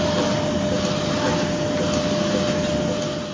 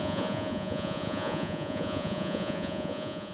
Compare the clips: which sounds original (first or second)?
first